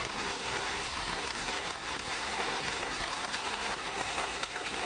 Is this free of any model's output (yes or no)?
no